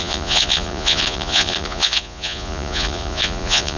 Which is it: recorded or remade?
remade